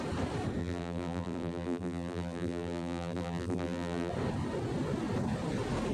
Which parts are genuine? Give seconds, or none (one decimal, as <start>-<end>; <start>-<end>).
0.0-0.6; 4.1-5.9